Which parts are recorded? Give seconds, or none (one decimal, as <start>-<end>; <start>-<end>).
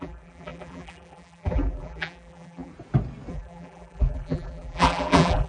2.7-3.3